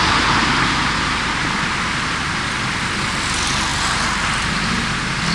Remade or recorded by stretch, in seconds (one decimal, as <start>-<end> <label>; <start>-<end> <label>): 0.0-3.7 recorded; 3.7-4.7 remade; 4.7-5.3 recorded